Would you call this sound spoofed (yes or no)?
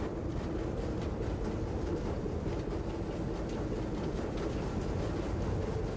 no